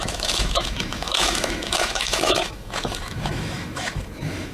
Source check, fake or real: fake